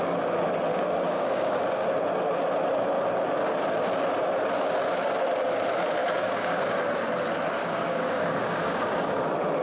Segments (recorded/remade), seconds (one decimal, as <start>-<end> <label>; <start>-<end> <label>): 0.0-0.7 recorded; 0.7-1.6 remade; 1.6-6.0 recorded; 6.0-6.6 remade; 6.6-7.6 recorded; 7.6-9.2 remade; 9.2-9.6 recorded